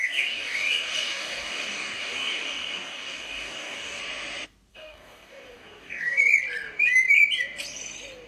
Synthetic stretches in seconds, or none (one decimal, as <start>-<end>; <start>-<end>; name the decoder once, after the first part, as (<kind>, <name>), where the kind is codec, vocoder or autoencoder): 0.0-4.0 (codec, DAC); 4.7-6.2